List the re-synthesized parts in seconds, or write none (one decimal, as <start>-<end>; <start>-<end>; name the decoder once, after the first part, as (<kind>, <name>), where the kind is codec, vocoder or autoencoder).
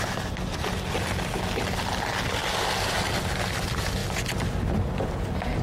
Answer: none